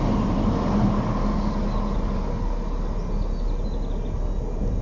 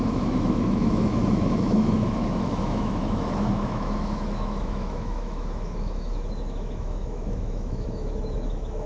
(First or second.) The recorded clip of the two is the first